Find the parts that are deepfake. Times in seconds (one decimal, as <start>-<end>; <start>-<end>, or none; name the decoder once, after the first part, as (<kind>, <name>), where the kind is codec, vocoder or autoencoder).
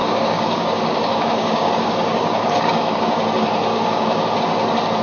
0.0-3.0 (codec, DAC); 3.7-4.4